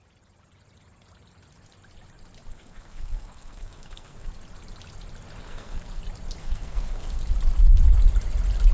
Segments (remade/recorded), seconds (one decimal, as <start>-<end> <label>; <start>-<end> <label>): 0.0-2.5 recorded; 2.5-4.3 remade; 4.3-5.4 recorded; 5.4-6.0 remade; 6.0-6.4 recorded; 6.4-7.2 remade; 7.2-8.7 recorded